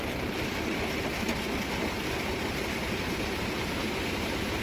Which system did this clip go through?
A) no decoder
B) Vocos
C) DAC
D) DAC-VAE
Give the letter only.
A